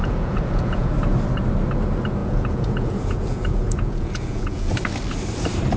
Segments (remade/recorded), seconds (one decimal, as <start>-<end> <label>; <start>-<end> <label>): 0.0-0.9 remade; 0.9-2.2 recorded; 2.2-4.7 remade; 4.7-5.8 recorded